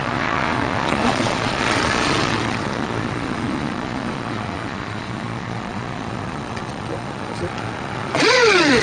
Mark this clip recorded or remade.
remade